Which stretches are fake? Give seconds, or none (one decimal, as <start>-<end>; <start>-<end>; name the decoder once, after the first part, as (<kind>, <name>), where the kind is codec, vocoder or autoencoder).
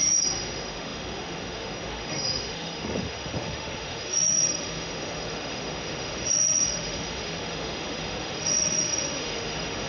0.0-9.9 (autoencoder, DAC-VAE)